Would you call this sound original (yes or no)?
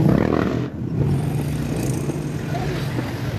yes